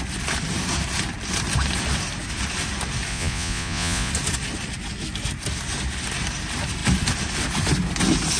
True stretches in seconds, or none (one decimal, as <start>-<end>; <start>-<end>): 0.0-3.1; 4.1-8.4